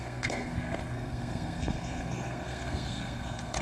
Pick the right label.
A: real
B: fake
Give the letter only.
B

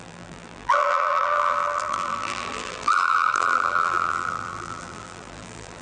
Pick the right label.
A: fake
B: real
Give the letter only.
A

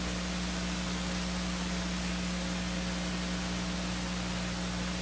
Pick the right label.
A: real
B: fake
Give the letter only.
A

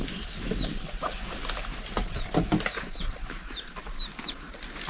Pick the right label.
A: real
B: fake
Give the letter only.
A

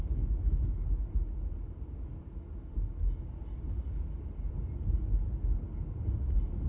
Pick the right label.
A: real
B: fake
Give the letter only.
A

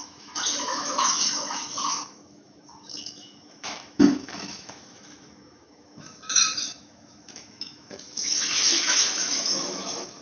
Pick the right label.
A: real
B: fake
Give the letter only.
B